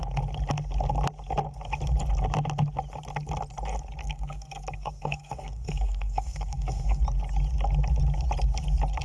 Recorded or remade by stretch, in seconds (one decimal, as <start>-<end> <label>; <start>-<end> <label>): 0.0-4.0 recorded; 4.0-7.0 remade; 7.0-9.0 recorded